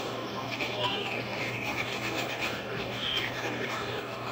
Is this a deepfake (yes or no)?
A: yes